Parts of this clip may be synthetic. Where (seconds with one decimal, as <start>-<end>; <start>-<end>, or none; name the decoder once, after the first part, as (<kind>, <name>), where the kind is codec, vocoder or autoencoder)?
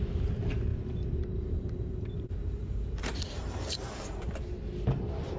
0.7-3.9 (vocoder, BigVGAN v2)